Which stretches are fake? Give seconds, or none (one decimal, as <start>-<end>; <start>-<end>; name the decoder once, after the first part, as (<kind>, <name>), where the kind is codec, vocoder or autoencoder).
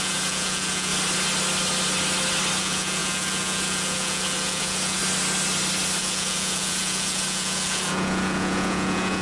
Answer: 0.0-0.9 (vocoder, Vocos); 2.6-5.0; 6.0-9.2